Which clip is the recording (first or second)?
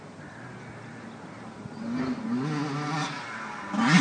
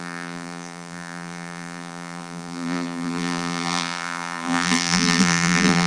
first